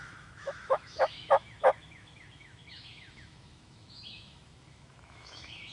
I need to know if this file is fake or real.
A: fake